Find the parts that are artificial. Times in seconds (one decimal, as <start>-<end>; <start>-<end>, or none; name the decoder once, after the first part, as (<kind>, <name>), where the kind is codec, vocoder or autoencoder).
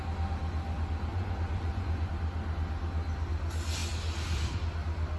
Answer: 1.1-2.1 (vocoder, Vocos)